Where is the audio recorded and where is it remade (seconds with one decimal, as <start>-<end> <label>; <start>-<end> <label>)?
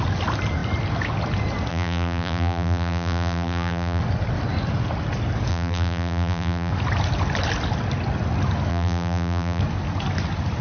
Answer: 0.0-1.7 recorded; 1.7-4.0 remade; 4.0-5.5 recorded; 5.5-6.7 remade; 6.7-8.7 recorded; 8.7-9.6 remade; 9.6-10.6 recorded